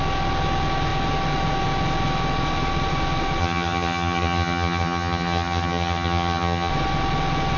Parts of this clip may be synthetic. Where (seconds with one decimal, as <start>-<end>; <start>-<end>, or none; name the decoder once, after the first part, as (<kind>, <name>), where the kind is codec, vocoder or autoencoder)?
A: 3.4-6.7 (vocoder, HiFi-GAN)